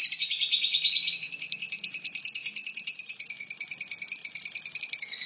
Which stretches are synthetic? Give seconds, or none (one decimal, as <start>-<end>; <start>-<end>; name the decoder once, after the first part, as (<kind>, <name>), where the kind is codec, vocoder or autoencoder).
none